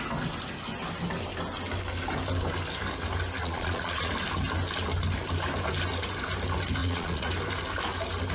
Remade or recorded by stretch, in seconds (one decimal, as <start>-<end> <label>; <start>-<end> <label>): 0.0-3.4 recorded; 3.4-4.1 remade; 4.1-6.8 recorded; 6.8-7.3 remade; 7.3-8.3 recorded